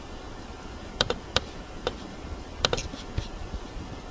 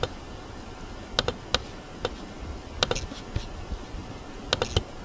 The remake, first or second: first